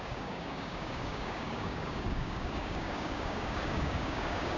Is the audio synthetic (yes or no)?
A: yes